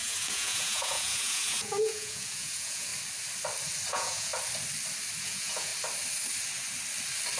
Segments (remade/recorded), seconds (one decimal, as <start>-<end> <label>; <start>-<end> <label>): 0.0-2.9 remade; 2.9-3.9 recorded; 3.9-4.3 remade; 4.3-5.2 recorded; 5.2-5.7 remade; 5.7-7.4 recorded